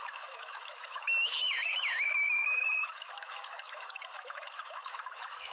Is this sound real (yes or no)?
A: no